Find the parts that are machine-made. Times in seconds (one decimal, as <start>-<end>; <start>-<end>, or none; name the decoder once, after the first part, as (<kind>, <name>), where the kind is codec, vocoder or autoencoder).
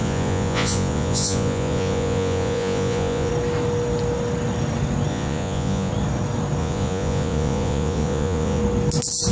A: 0.0-3.3 (vocoder, Vocos); 5.1-5.9; 6.6-8.6